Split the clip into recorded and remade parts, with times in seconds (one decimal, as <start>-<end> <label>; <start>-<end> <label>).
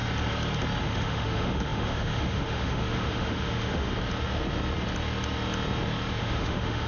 0.0-0.8 recorded; 0.8-3.9 remade; 3.9-6.2 recorded; 6.2-6.9 remade